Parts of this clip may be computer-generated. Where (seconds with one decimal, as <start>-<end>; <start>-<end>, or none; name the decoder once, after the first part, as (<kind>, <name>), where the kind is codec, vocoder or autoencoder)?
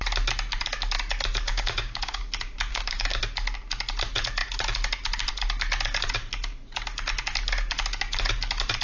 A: 1.5-2.2 (codec, DAC); 2.7-3.2